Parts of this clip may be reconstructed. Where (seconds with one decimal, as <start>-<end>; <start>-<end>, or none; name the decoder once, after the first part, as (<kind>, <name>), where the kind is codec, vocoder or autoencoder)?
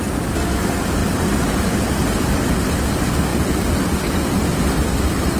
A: 3.3-4.5 (vocoder, BigVGAN v2)